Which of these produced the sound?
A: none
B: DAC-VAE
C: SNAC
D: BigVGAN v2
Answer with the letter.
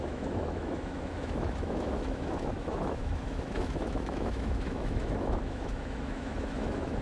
B